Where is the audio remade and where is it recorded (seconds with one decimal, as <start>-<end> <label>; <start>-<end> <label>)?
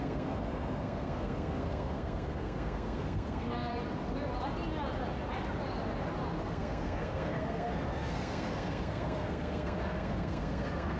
0.0-3.7 remade; 3.7-6.4 recorded; 6.4-11.0 remade